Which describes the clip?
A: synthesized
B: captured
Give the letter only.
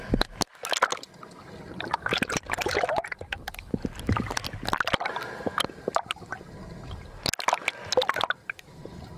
B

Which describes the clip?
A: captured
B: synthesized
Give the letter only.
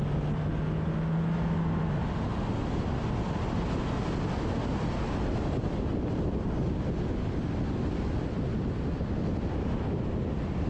A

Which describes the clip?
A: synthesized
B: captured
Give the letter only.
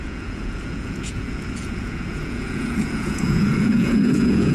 A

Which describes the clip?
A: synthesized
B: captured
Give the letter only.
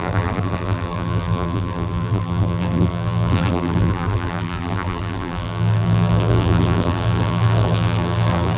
A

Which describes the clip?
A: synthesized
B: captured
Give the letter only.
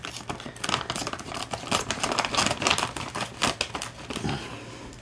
B